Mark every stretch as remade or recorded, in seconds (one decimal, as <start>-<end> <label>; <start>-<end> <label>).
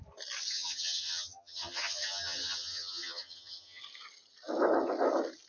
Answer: 0.0-0.5 recorded; 0.5-3.8 remade; 3.8-5.5 recorded